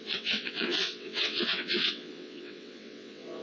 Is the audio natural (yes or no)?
no